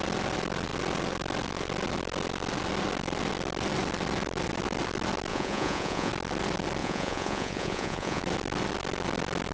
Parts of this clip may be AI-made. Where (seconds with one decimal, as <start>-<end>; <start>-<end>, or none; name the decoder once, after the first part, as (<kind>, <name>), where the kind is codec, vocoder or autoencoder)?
5.3-6.1 (vocoder, Vocos); 6.8-8.2